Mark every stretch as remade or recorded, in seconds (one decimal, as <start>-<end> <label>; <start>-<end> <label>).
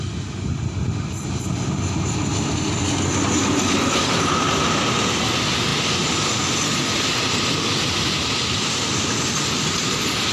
0.0-10.3 recorded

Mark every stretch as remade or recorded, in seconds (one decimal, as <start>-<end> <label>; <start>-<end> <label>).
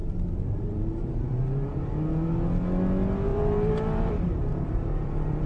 0.0-1.8 remade; 1.8-3.3 recorded; 3.3-5.5 remade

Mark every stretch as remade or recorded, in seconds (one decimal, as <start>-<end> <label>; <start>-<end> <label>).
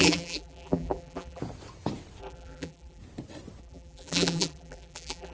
0.0-1.4 remade; 1.4-2.2 recorded; 2.2-3.0 remade; 3.0-3.6 recorded; 3.6-5.3 remade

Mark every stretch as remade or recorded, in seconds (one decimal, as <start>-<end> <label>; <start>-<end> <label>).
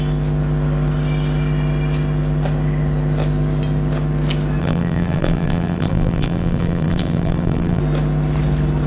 0.0-4.6 recorded; 4.6-7.8 remade; 7.8-8.9 recorded